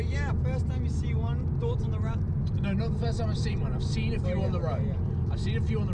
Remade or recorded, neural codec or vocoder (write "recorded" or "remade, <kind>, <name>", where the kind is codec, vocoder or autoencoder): recorded